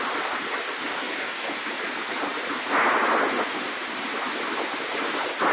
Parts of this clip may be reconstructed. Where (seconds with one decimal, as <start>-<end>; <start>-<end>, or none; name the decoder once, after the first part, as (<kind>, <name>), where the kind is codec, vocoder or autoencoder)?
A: 0.9-1.5 (codec, DAC)